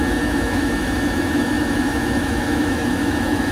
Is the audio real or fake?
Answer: fake